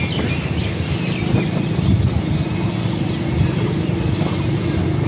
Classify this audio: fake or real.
real